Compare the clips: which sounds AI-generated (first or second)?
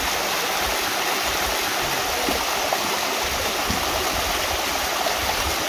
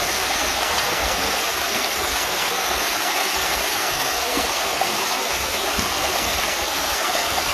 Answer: second